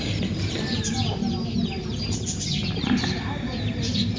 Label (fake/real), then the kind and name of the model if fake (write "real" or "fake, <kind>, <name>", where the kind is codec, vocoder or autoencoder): real